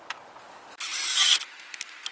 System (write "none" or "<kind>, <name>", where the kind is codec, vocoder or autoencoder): none